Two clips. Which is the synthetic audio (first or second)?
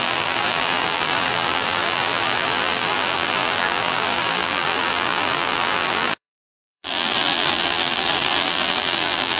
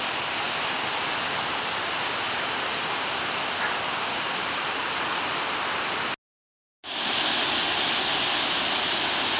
first